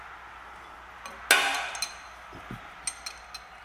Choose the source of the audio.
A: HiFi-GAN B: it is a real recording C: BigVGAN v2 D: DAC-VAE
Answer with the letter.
B